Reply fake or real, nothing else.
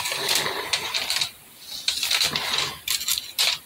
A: real